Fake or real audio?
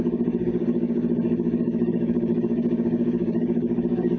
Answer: fake